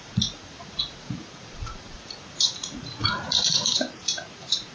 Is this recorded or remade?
remade